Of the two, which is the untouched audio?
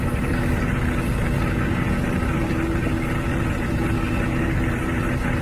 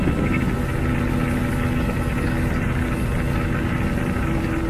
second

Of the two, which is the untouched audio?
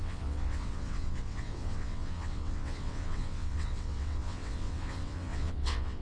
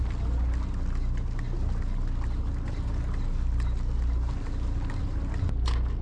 second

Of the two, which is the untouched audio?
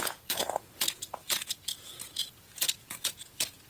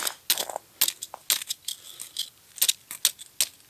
second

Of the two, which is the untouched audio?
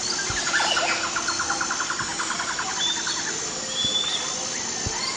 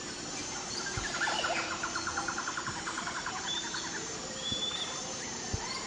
first